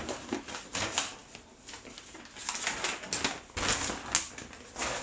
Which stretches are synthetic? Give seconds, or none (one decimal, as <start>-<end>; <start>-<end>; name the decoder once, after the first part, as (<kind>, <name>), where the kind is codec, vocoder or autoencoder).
none